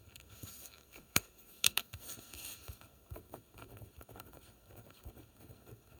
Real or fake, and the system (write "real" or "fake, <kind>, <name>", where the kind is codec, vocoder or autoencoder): fake, codec, SNAC